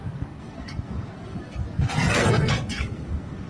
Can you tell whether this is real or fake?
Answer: fake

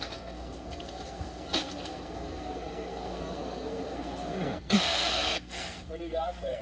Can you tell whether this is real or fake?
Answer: fake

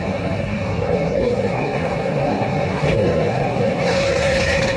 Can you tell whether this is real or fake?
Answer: fake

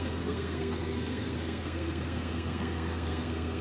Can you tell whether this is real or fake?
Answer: fake